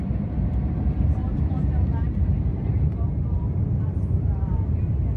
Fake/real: fake